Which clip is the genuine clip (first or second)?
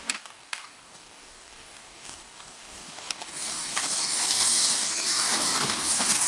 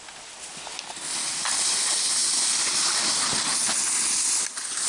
second